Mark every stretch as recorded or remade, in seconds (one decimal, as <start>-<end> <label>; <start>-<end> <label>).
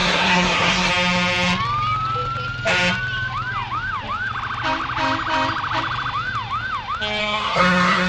0.0-0.9 remade; 0.9-7.2 recorded; 7.2-8.1 remade